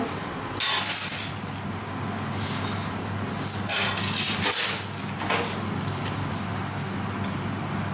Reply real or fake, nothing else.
real